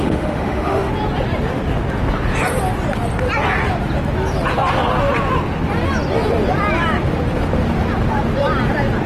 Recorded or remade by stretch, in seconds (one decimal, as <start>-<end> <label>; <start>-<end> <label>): 0.0-0.9 remade; 0.9-9.1 recorded